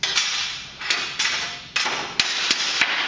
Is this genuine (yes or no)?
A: yes